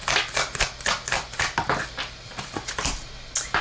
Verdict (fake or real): real